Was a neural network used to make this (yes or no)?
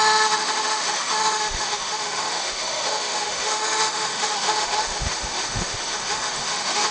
yes